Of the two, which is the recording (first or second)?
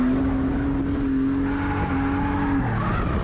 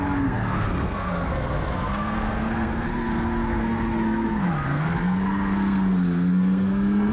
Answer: first